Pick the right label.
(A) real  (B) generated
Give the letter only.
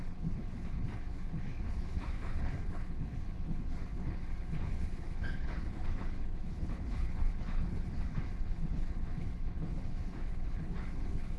B